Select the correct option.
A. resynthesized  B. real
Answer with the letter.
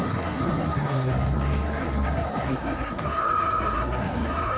A